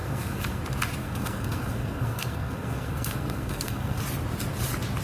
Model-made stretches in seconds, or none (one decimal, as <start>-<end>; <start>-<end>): 0.0-0.6; 1.0-4.0